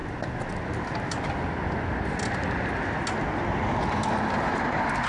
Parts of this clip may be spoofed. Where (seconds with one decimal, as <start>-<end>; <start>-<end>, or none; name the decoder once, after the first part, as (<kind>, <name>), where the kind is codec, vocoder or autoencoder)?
none